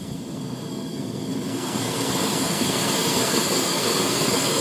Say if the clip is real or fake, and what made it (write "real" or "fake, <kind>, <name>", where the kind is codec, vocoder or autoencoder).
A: fake, codec, SNAC